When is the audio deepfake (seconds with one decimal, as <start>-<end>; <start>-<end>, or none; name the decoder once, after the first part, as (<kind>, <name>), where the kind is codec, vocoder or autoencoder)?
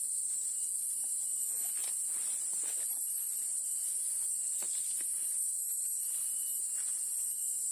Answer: 1.8-6.3 (vocoder, BigVGAN v2)